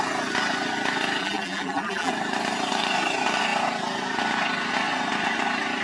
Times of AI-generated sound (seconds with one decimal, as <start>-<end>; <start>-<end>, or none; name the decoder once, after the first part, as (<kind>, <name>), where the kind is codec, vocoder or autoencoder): 1.2-2.1 (vocoder, BigVGAN v2)